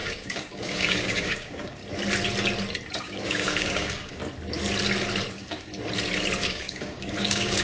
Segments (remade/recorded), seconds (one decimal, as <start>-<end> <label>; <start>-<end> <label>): 0.0-1.8 remade; 1.8-3.0 recorded; 3.0-4.2 remade; 4.2-5.3 recorded; 5.3-5.7 remade; 5.7-6.4 recorded; 6.4-7.6 remade